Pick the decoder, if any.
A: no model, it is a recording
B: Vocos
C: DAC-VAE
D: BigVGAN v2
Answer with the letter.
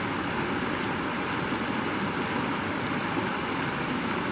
A